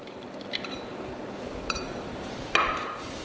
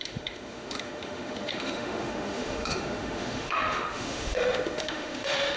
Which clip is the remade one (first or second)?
second